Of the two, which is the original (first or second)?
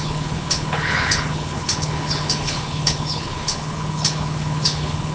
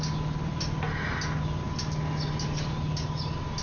second